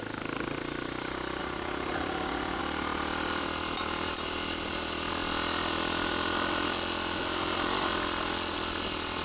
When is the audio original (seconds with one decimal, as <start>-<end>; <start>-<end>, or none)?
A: 0.0-1.4; 2.6-9.2